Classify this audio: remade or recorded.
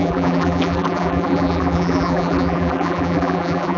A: remade